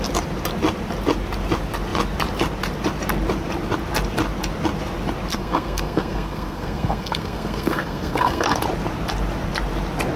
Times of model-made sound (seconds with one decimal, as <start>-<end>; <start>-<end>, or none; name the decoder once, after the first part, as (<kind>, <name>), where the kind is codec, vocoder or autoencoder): 5.3-8.6 (codec, SNAC)